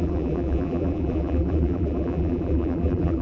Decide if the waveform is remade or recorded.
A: remade